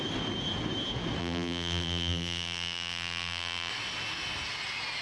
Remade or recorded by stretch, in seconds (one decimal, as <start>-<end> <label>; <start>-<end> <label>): 0.0-1.2 recorded; 1.2-3.7 remade; 3.7-5.0 recorded